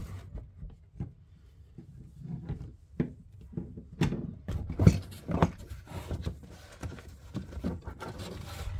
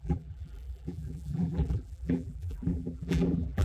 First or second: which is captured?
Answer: first